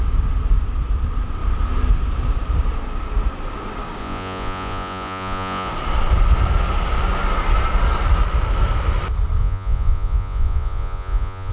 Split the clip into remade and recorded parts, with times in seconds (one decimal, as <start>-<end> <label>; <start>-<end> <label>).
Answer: 0.0-4.0 recorded; 4.0-5.7 remade; 5.7-9.4 recorded; 9.4-11.5 remade